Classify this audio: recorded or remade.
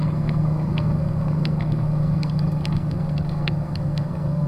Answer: remade